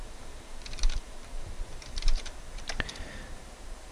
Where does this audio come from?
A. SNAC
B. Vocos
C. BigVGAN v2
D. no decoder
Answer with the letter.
C